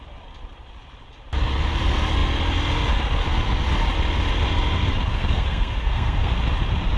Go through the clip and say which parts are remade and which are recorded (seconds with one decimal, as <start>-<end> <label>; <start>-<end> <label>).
0.0-5.1 recorded; 5.1-6.4 remade; 6.4-7.0 recorded